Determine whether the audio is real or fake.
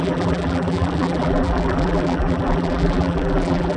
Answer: fake